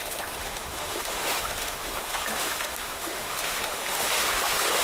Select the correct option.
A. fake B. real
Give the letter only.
A